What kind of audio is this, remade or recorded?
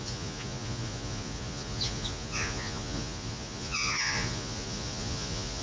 remade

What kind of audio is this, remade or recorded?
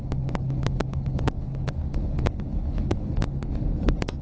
remade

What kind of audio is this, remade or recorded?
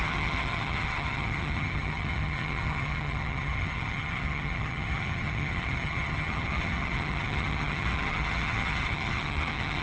remade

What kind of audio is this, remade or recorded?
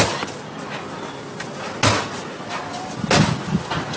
recorded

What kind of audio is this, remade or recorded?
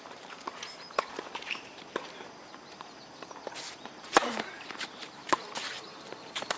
remade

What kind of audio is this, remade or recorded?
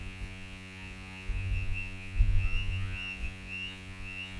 remade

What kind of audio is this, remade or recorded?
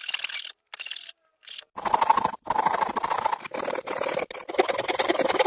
recorded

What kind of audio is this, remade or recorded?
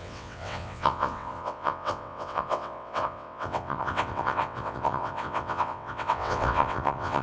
remade